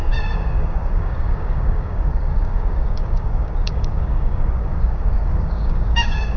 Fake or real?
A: fake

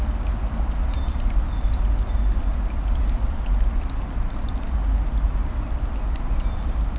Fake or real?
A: real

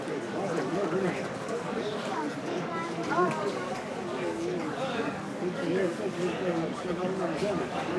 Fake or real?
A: fake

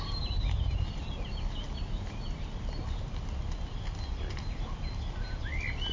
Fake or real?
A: real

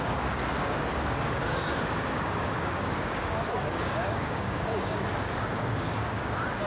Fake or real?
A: fake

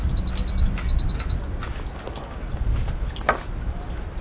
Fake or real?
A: real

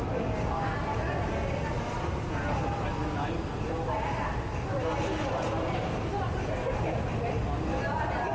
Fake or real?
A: real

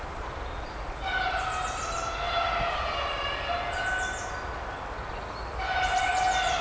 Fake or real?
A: real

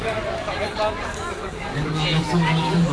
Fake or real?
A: fake